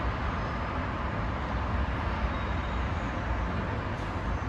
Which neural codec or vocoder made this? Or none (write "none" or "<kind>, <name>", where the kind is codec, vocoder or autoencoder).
none